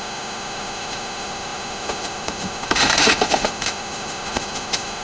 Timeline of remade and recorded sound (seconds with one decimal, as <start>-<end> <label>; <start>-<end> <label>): 0.0-5.0 remade